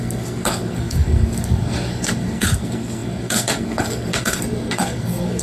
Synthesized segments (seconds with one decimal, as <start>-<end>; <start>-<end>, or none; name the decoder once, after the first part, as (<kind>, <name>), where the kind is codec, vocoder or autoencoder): 0.0-5.4 (codec, SNAC)